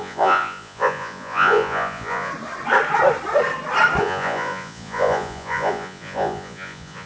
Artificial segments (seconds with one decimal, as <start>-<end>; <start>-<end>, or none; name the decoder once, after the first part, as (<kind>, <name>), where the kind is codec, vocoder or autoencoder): 0.0-2.3 (vocoder, Vocos); 4.0-7.1